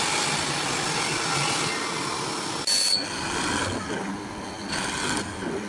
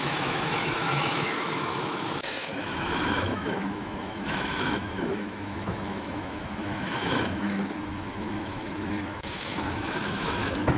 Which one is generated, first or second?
second